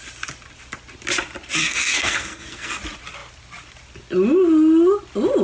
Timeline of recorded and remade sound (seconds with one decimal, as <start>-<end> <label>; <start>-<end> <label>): 0.0-1.6 recorded; 1.6-2.8 remade; 2.8-5.4 recorded